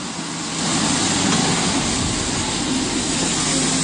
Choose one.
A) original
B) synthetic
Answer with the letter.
A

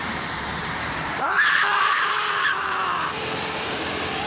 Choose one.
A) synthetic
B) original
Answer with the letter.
A